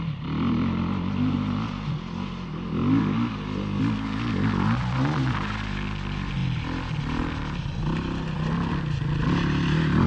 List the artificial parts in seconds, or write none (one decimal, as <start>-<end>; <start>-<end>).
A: none